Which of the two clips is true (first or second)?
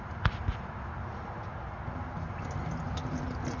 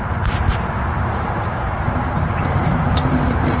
first